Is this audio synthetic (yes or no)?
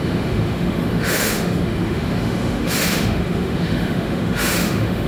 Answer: yes